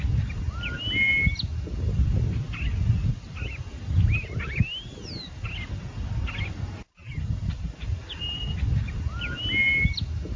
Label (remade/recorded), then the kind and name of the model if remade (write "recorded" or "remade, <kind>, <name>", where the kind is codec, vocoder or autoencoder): recorded